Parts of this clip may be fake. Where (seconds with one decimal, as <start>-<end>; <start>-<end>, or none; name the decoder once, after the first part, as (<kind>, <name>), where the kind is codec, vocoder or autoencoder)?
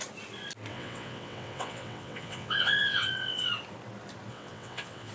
0.7-3.5 (vocoder, WaveNeXt); 4.3-5.1